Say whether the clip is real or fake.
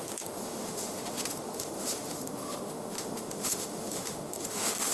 fake